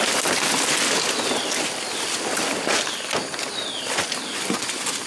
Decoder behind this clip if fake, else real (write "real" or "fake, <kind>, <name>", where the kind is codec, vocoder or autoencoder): real